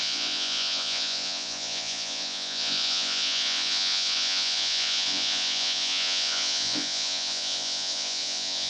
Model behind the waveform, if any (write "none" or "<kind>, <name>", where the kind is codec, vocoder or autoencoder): vocoder, Vocos